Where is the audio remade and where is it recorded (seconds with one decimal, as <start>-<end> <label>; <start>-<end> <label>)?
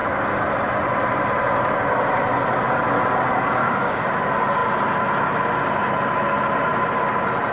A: 0.0-3.6 recorded; 3.6-4.1 remade; 4.1-7.5 recorded